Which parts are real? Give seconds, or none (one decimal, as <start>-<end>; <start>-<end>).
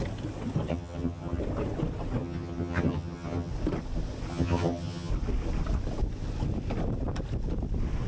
0.0-0.7; 1.4-2.2; 3.5-4.3; 5.1-8.1